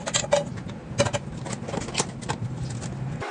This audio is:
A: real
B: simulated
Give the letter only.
A